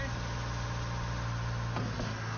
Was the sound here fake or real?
real